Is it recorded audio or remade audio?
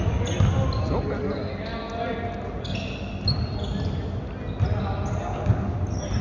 recorded